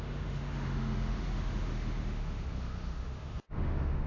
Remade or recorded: remade